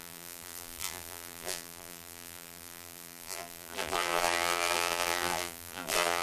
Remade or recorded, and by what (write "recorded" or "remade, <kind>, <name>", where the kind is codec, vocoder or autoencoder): remade, vocoder, BigVGAN v2